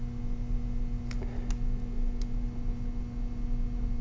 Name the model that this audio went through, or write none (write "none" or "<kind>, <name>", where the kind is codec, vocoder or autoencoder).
none